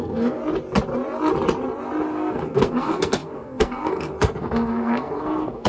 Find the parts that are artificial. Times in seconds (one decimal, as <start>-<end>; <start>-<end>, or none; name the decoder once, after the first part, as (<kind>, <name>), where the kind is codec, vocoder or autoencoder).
0.0-0.4 (codec, SNAC); 2.1-5.7